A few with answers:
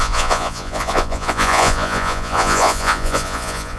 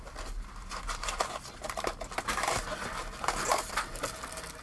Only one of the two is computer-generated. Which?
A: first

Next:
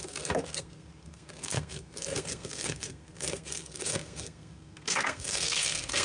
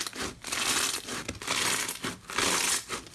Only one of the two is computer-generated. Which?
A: first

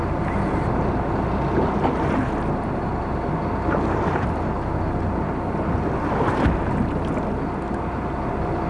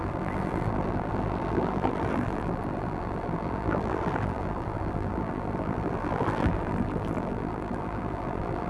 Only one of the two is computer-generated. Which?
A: second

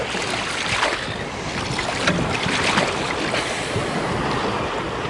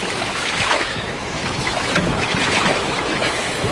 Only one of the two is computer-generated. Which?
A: second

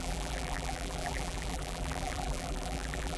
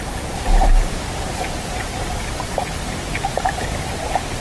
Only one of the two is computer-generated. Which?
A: first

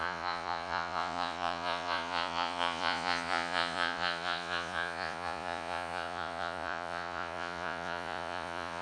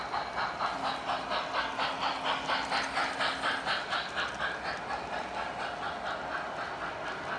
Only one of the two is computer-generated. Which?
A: first